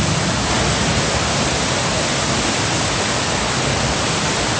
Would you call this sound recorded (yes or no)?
yes